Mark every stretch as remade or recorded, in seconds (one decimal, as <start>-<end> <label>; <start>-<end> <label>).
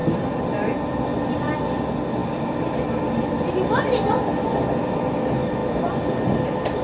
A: 0.0-6.8 recorded